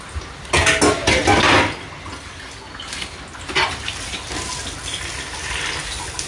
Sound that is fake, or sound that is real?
real